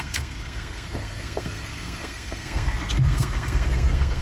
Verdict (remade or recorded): remade